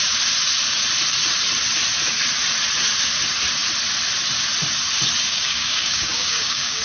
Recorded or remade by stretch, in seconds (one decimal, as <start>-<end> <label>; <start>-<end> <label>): 0.0-5.3 recorded; 5.3-6.8 remade